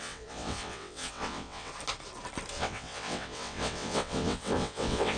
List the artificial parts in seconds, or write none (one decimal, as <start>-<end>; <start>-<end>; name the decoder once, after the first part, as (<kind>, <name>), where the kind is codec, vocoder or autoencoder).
0.0-1.7 (vocoder, WaveNeXt); 2.5-5.2